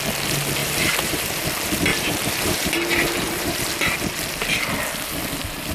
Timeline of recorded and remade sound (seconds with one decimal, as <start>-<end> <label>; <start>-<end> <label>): 0.0-0.6 recorded; 0.6-1.4 remade; 1.4-1.9 recorded; 1.9-3.6 remade; 3.6-5.7 recorded